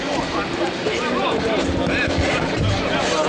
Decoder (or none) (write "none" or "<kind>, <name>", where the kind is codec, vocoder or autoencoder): none